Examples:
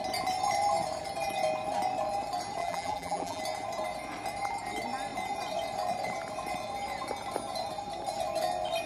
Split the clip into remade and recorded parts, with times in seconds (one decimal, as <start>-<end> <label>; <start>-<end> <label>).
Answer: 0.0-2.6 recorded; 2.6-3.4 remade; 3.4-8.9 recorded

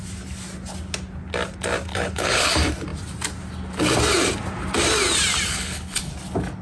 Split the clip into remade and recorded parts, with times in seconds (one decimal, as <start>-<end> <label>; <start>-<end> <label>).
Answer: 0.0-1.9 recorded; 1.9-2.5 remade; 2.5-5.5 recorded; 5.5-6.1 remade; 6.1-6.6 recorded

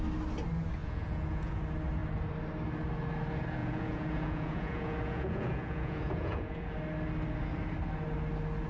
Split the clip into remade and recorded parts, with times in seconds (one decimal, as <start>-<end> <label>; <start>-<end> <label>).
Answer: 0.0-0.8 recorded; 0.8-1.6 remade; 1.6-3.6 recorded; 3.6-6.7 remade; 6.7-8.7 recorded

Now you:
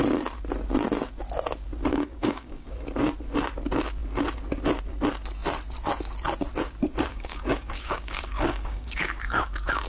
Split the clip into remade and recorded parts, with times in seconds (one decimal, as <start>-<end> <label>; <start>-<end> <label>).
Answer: 0.0-1.9 recorded; 1.9-2.7 remade; 2.7-7.1 recorded; 7.1-9.9 remade